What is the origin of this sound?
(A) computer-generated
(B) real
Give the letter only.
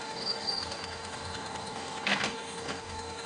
A